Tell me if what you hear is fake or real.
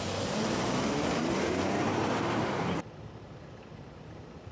fake